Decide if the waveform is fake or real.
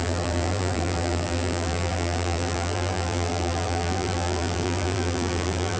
fake